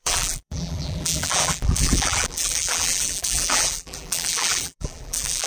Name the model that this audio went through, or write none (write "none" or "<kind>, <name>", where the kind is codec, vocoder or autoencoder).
vocoder, BigVGAN v2